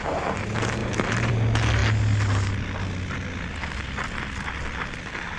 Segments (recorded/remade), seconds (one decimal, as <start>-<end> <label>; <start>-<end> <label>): 0.0-0.8 recorded; 0.8-1.3 remade; 1.3-5.4 recorded